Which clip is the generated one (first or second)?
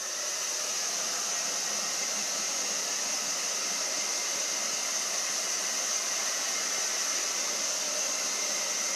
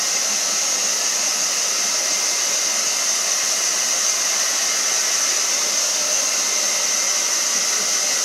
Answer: first